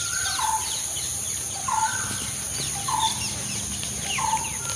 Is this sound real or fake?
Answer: real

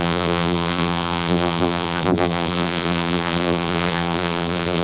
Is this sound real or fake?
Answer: fake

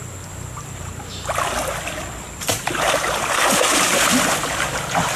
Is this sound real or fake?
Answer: real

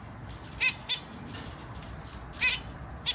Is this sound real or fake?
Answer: fake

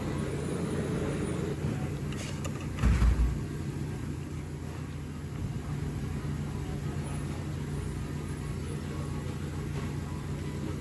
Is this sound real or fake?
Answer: real